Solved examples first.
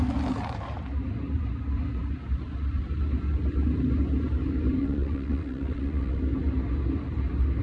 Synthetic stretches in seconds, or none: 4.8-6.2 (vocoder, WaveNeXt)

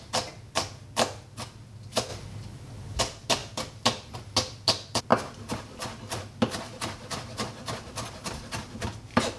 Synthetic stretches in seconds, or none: none

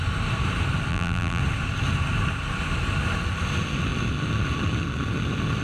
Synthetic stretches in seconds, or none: 0.9-1.4 (vocoder, BigVGAN v2)